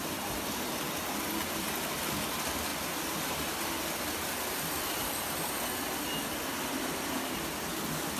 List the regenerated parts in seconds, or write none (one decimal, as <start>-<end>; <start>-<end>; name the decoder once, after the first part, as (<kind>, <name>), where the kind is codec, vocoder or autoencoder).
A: none